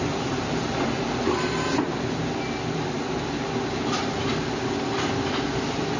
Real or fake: real